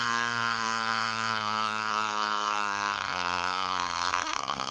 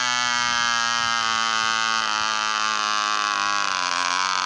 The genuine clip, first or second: second